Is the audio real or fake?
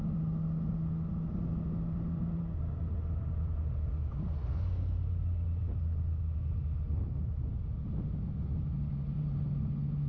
real